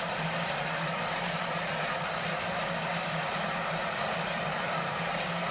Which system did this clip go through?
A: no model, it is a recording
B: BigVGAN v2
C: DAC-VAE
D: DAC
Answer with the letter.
B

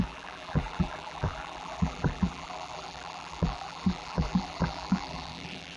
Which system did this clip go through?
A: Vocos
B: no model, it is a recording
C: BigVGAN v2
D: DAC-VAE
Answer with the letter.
C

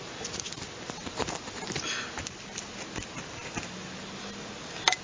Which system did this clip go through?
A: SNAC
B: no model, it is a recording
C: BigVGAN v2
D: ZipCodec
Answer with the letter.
B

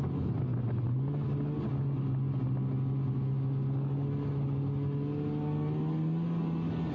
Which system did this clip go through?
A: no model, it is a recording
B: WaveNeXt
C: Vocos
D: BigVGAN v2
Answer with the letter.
A